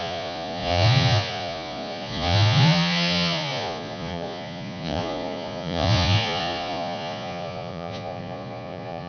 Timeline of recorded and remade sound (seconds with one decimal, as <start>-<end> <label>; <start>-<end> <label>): 0.0-9.1 remade